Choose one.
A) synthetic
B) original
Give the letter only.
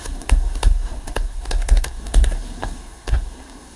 A